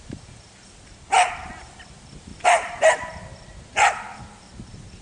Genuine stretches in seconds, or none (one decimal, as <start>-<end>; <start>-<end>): 0.0-2.3; 2.8-5.0